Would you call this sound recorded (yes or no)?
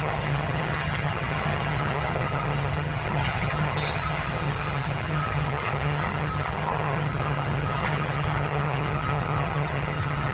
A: no